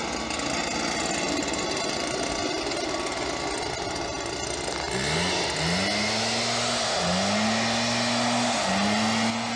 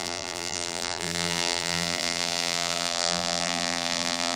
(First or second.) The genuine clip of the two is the first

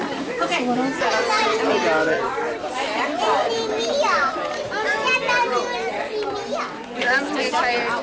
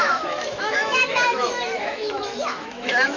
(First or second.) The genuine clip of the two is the first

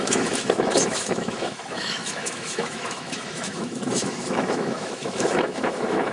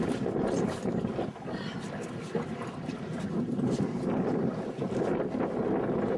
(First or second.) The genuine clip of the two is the second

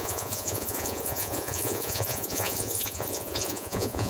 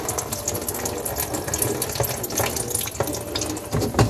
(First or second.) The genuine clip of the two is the second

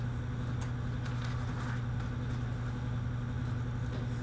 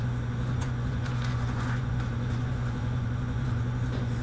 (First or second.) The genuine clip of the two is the first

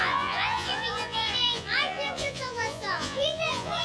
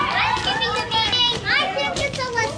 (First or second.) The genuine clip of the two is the second